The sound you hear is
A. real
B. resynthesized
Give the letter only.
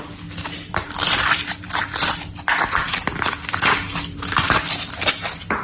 A